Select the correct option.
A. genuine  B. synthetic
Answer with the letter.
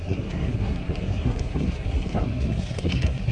B